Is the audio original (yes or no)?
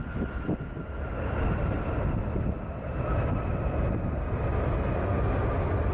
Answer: yes